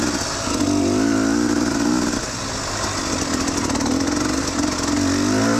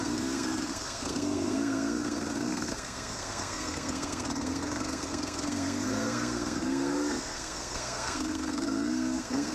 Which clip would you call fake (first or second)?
second